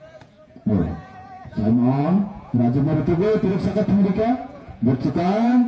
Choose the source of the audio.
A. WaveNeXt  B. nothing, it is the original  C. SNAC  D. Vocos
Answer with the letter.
D